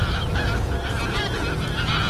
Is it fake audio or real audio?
real